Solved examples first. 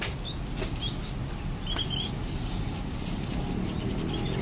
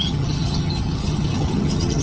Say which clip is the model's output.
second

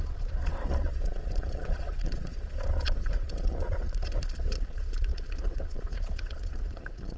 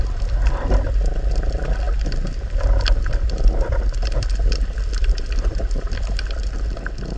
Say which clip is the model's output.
first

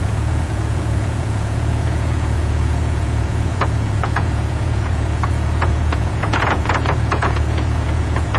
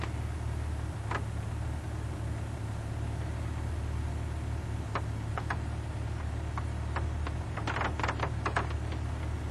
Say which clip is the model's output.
first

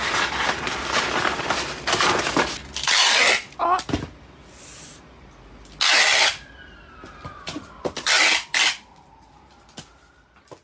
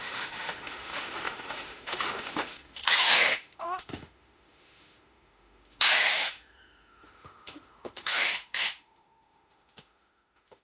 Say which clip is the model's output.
second